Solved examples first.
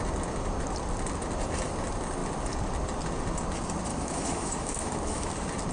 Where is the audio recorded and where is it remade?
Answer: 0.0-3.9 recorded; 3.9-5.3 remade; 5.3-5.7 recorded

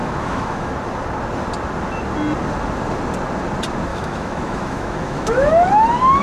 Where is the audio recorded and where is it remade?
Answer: 0.0-0.7 remade; 0.7-3.9 recorded; 3.9-5.7 remade; 5.7-6.2 recorded